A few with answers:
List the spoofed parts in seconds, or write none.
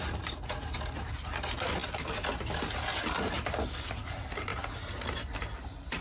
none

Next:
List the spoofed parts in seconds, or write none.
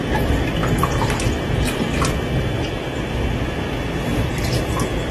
none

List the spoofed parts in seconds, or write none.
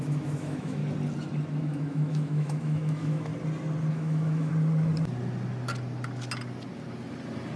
0.0-0.8 (autoencoder, DAC-VAE); 1.6-3.3; 3.9-4.5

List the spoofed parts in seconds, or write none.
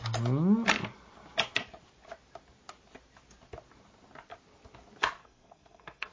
5.2-6.1 (codec, SNAC)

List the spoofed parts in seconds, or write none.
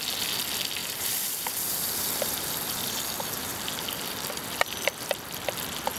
0.8-1.4 (vocoder, BigVGAN v2); 3.5-5.6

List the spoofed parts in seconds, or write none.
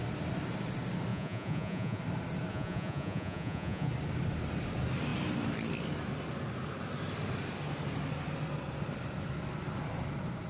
1.1-2.0 (vocoder, Vocos); 2.5-3.9